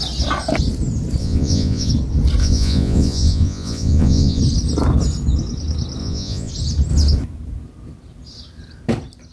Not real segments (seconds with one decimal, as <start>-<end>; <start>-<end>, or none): 1.2-1.9; 2.4-4.4; 6.0-6.5